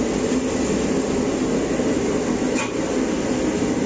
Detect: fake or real real